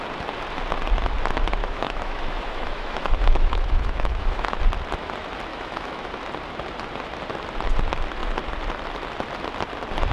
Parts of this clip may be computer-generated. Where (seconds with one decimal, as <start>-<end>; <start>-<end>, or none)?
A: 1.6-4.6; 5.5-6.1